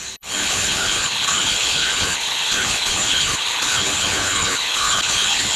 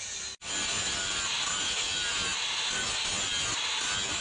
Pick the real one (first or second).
second